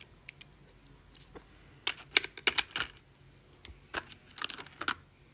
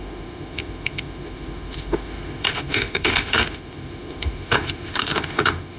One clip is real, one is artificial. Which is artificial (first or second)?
second